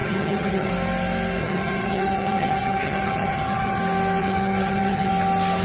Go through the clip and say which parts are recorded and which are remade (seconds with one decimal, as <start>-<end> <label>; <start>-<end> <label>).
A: 0.0-0.7 remade; 0.7-1.4 recorded; 1.4-3.8 remade; 3.8-4.2 recorded; 4.2-5.1 remade; 5.1-5.6 recorded